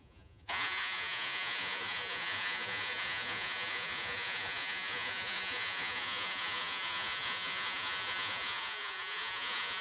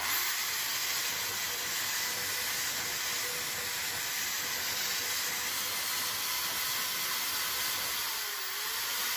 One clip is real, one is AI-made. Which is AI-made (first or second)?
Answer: first